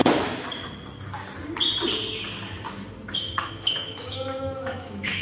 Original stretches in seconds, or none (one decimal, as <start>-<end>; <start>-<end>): 0.0-3.1